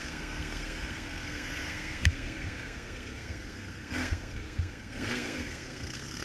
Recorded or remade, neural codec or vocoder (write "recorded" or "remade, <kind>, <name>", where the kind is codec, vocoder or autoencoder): remade, codec, SNAC